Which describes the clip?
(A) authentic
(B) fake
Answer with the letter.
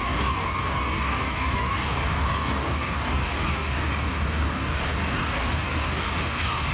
B